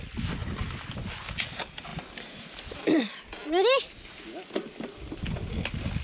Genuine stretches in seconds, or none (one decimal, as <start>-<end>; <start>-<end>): 0.0-6.0